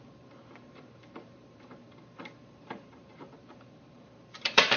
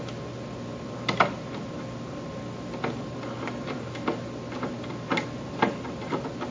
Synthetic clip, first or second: first